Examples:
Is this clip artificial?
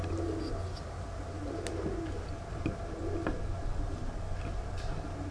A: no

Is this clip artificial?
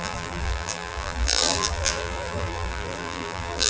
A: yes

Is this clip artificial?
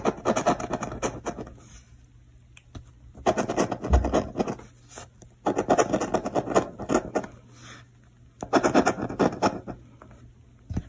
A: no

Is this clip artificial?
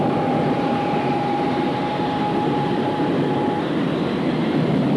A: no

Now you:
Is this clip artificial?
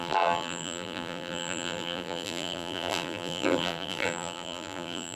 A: yes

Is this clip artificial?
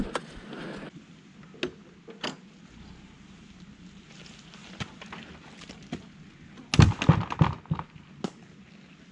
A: no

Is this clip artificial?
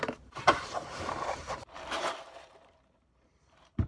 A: yes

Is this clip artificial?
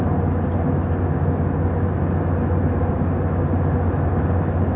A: no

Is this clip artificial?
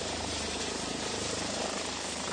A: yes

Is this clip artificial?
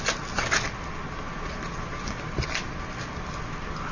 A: no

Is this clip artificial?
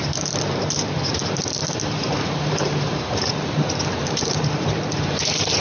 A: yes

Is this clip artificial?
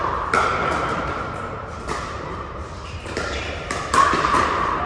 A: yes